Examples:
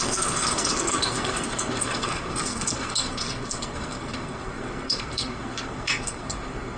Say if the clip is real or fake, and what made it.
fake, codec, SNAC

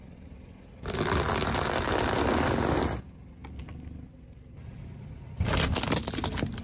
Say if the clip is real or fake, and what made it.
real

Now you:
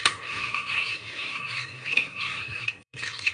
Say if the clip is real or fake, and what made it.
fake, codec, SNAC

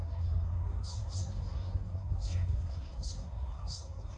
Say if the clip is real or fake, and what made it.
fake, codec, SNAC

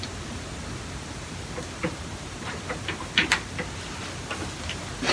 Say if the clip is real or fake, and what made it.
real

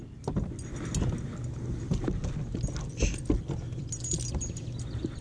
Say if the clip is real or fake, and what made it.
real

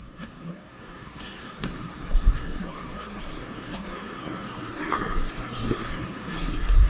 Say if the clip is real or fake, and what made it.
fake, codec, SNAC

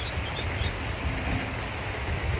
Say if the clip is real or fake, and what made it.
real